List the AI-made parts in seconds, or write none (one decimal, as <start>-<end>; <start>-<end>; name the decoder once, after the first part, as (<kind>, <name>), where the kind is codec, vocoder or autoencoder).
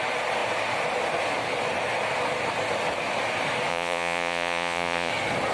3.7-5.1 (vocoder, Vocos)